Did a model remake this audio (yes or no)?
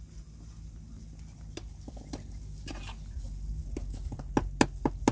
no